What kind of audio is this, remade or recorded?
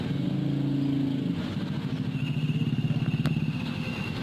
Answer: recorded